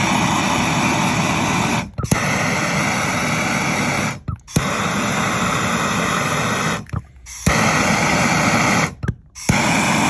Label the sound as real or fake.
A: real